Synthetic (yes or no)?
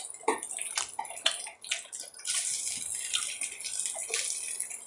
no